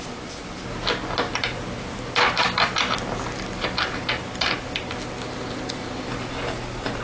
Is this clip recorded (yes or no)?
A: yes